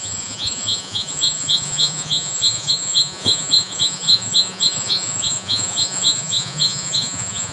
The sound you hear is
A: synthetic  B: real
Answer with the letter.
A